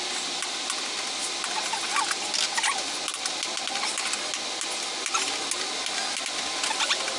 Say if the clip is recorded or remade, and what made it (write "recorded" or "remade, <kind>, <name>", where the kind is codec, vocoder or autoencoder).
recorded